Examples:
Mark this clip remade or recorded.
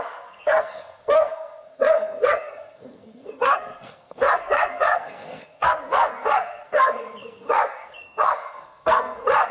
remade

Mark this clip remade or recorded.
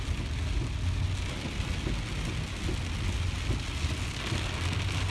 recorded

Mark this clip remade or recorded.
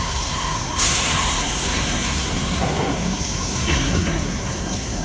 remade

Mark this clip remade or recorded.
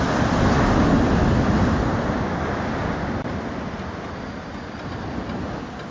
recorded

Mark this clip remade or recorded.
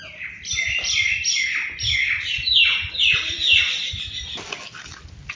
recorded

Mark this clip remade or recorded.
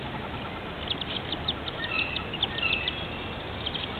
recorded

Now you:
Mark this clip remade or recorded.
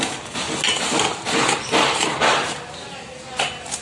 recorded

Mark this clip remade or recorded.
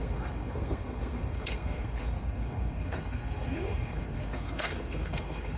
remade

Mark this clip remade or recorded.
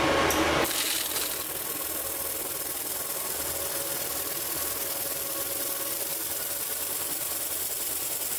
recorded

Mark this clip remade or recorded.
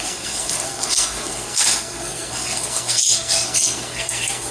remade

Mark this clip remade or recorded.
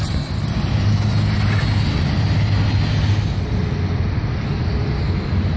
recorded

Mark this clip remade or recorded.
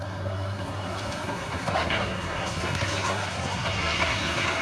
remade